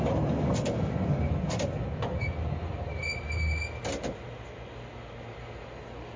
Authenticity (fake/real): real